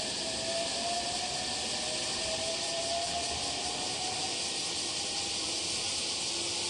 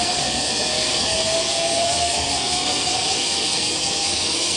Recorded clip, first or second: first